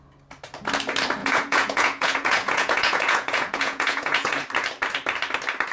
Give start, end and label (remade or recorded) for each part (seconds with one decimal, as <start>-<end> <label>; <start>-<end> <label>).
0.0-1.2 recorded; 1.2-4.4 remade; 4.4-5.7 recorded